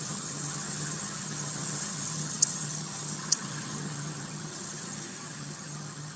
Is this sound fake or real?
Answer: fake